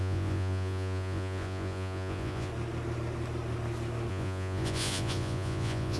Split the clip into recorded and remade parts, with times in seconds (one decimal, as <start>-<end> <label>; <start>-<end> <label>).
0.0-2.5 remade; 2.5-4.1 recorded; 4.1-6.0 remade